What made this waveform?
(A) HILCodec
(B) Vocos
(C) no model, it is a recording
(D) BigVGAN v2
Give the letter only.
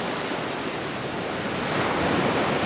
C